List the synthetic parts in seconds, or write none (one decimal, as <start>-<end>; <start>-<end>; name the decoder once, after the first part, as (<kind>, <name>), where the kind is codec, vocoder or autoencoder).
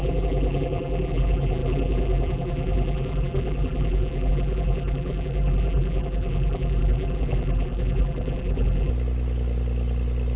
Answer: 0.0-8.9 (vocoder, BigVGAN v2)